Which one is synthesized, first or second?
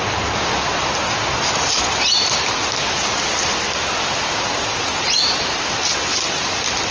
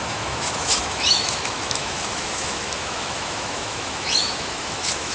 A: second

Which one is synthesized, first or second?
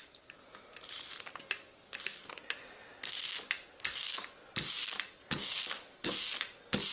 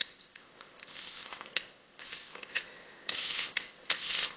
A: second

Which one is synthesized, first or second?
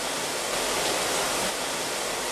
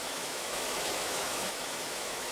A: second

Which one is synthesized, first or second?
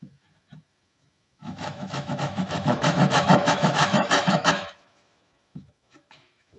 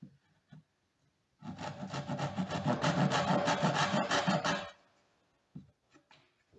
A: first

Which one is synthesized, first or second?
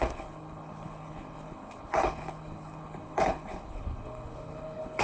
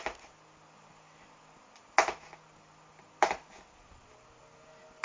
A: first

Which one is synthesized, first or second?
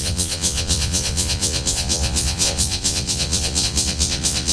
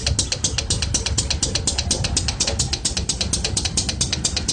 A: first